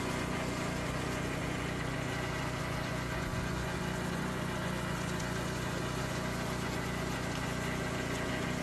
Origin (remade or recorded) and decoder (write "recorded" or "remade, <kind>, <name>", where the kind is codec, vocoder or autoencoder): remade, vocoder, Vocos